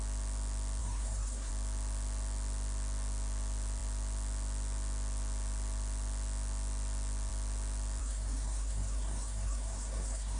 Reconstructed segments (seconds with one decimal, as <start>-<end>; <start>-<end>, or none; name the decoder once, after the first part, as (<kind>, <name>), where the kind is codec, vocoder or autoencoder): 0.8-1.5 (codec, SNAC); 8.0-10.4